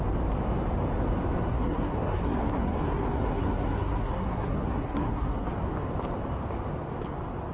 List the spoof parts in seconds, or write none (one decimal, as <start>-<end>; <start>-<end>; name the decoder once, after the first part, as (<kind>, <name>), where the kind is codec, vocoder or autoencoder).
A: 1.5-5.5 (codec, SNAC)